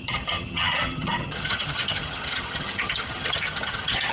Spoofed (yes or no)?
yes